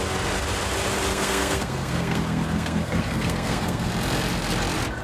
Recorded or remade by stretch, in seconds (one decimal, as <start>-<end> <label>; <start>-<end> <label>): 0.0-1.1 recorded; 1.1-3.9 remade; 3.9-5.0 recorded

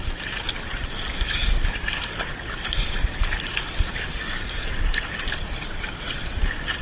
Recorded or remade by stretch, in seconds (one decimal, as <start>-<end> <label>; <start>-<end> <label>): 0.0-6.8 recorded

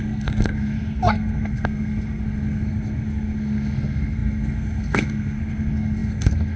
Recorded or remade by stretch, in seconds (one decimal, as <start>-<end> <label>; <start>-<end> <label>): 0.0-6.6 remade

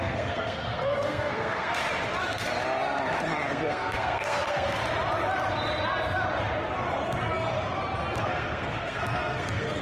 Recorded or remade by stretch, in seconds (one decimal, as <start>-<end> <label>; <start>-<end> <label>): 0.0-1.8 remade; 1.8-3.5 recorded; 3.5-4.8 remade; 4.8-8.2 recorded; 8.2-9.8 remade

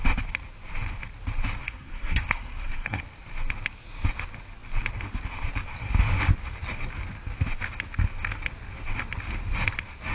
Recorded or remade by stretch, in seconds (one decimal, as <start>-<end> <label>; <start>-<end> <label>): 0.0-1.6 recorded; 1.6-3.0 remade; 3.0-10.1 recorded

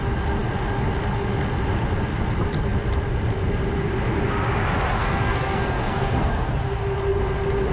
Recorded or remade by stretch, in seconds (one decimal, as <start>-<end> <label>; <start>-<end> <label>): 0.0-5.0 recorded; 5.0-6.5 remade; 6.5-7.7 recorded

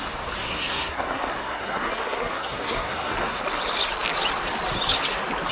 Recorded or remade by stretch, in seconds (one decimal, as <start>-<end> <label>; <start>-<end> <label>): 0.0-0.4 recorded; 0.4-3.4 remade; 3.4-5.5 recorded

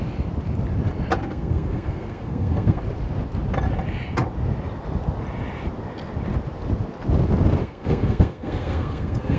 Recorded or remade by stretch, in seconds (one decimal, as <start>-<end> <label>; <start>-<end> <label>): 0.0-1.2 recorded; 1.2-2.8 remade; 2.8-7.6 recorded; 7.6-9.4 remade